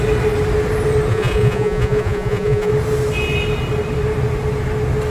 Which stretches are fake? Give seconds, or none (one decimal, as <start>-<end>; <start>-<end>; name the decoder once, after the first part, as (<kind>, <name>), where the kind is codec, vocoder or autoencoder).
1.1-2.7 (vocoder, Vocos)